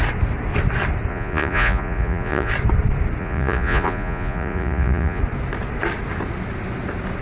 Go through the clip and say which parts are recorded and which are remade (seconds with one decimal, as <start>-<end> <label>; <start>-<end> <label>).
0.0-1.1 recorded; 1.1-2.5 remade; 2.5-3.2 recorded; 3.2-5.2 remade; 5.2-7.2 recorded